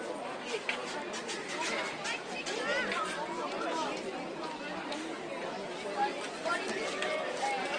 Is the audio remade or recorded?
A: recorded